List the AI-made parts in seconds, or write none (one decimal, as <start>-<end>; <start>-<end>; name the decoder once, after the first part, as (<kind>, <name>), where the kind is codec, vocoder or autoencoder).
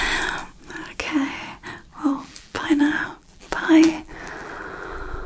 1.9-5.3 (vocoder, BigVGAN v2)